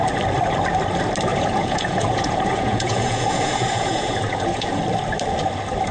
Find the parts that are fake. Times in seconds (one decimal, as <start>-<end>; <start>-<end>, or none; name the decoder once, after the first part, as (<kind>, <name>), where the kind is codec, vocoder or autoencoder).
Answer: 1.3-4.8 (vocoder, Vocos)